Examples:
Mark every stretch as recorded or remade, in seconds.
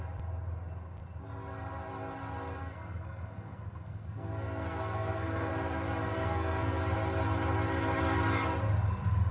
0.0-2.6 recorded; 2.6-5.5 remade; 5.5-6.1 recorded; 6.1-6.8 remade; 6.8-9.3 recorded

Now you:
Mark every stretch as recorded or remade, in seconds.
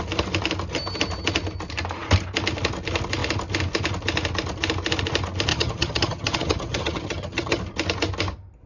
0.0-5.5 recorded; 5.5-7.6 remade; 7.6-8.7 recorded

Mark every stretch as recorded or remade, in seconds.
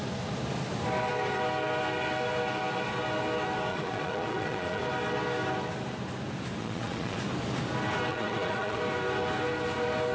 0.0-3.7 recorded; 3.7-4.8 remade; 4.8-6.6 recorded; 6.6-7.2 remade; 7.2-8.1 recorded; 8.1-8.8 remade; 8.8-10.1 recorded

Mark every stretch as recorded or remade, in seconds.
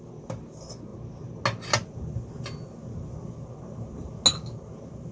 0.0-5.1 recorded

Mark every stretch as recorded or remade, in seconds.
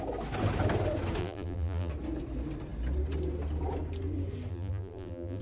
0.0-1.2 recorded; 1.2-1.9 remade; 1.9-4.5 recorded; 4.5-5.4 remade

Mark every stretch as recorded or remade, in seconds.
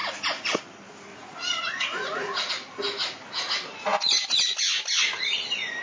0.0-0.6 remade; 0.6-1.1 recorded; 1.1-2.5 remade; 2.5-5.8 recorded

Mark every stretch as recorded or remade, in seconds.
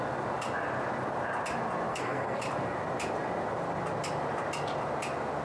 0.0-1.9 recorded; 1.9-2.4 remade; 2.4-5.4 recorded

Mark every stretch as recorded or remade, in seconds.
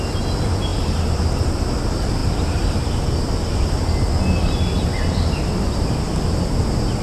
0.0-7.0 recorded